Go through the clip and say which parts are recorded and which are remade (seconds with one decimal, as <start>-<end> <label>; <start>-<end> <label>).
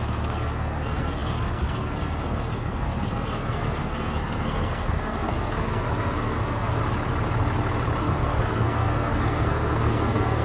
0.0-6.8 remade; 6.8-8.0 recorded; 8.0-10.4 remade